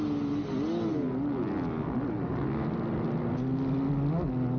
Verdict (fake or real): real